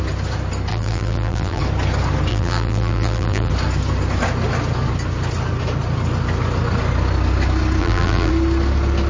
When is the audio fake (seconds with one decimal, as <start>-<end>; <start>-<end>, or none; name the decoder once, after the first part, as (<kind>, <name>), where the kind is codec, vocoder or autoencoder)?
0.7-1.6 (vocoder, BigVGAN v2); 2.3-3.5; 7.8-8.3